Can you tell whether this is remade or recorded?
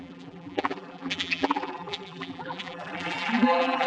remade